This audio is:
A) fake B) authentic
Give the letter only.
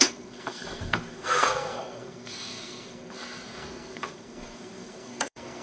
A